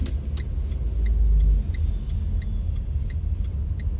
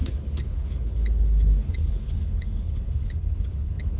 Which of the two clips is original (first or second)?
first